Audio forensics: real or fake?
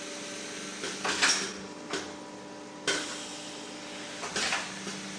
real